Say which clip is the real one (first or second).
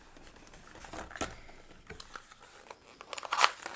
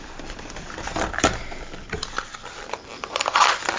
first